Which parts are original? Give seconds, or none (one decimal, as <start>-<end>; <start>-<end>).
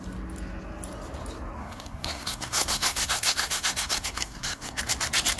0.0-1.6; 4.8-5.4